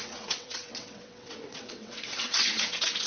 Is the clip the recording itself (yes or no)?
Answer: no